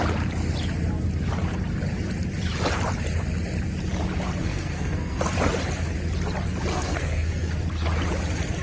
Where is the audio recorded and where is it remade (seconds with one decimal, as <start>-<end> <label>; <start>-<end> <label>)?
0.0-4.4 recorded; 4.4-5.2 remade; 5.2-6.7 recorded; 6.7-7.6 remade; 7.6-8.6 recorded